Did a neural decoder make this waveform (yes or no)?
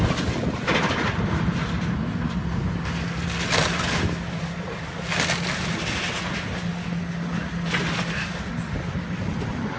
no